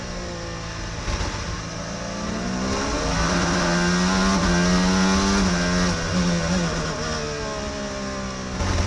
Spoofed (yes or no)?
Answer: no